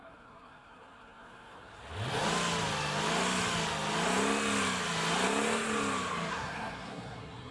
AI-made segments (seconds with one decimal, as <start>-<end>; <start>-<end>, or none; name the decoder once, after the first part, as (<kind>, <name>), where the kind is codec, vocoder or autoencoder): 0.0-1.8 (codec, SNAC); 6.3-7.5